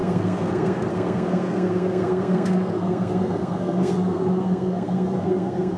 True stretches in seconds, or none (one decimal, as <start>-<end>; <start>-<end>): none